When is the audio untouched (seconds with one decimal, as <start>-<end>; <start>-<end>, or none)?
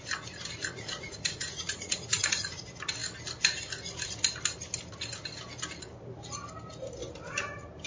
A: 0.0-0.6; 2.6-7.9